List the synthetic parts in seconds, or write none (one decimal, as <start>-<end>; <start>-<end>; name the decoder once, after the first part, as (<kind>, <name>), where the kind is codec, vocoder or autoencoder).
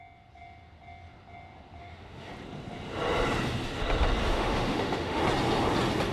1.8-2.3 (autoencoder, DAC-VAE); 4.2-5.2